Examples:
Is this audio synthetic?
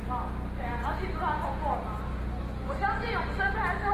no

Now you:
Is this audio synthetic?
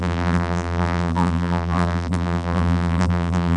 yes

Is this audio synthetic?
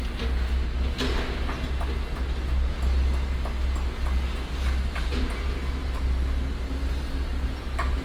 no